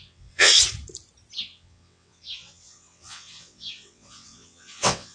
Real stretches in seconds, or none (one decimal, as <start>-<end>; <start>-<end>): 0.5-1.4